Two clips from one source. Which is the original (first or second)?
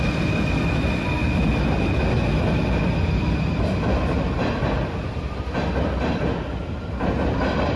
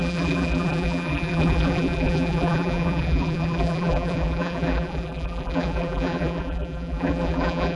first